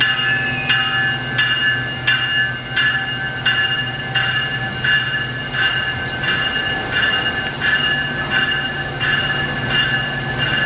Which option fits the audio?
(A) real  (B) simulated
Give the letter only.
A